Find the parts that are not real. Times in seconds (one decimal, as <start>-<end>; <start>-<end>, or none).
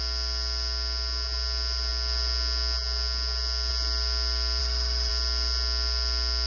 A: 4.6-5.1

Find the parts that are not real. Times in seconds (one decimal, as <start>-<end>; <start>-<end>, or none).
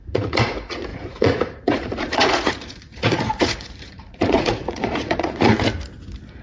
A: 0.0-5.5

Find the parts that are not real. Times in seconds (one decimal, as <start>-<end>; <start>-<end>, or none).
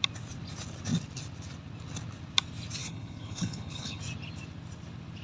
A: 2.8-4.0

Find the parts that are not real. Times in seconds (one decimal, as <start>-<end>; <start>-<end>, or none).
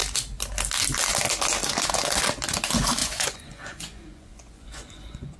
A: 3.0-5.4